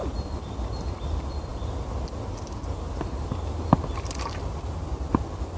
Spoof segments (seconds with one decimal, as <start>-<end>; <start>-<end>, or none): none